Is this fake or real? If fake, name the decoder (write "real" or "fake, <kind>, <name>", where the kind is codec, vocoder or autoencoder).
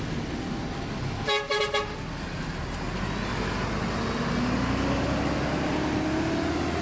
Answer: real